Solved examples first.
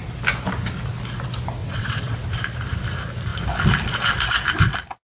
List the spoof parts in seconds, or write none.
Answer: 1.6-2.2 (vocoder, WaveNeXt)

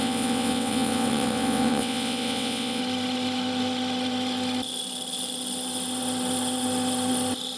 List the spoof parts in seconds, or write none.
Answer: 0.0-2.8 (vocoder, WaveNeXt)

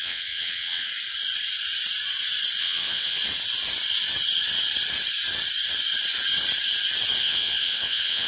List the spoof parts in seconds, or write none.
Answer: 0.0-0.9 (vocoder, WaveNeXt); 2.6-3.2; 7.2-8.3

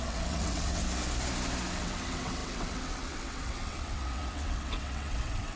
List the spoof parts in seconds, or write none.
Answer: 0.0-0.8 (vocoder, WaveNeXt); 1.7-5.6

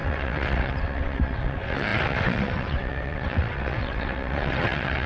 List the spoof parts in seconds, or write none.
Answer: 0.0-5.1 (vocoder, WaveNeXt)

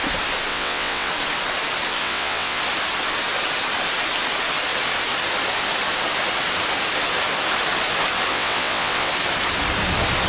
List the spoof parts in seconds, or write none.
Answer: 0.5-1.1 (vocoder, WaveNeXt); 2.0-2.6; 8.3-9.1